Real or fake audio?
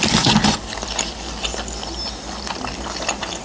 real